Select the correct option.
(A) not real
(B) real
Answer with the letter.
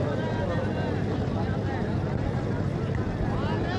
B